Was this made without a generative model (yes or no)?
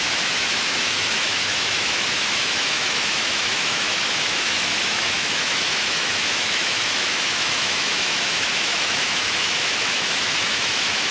no